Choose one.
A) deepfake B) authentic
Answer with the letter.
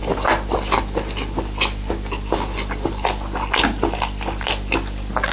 B